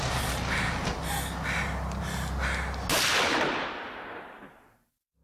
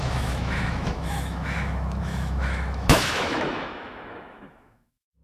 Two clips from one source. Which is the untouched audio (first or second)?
first